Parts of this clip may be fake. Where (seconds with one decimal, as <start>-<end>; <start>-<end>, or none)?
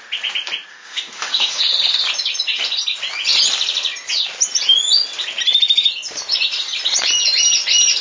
0.7-1.6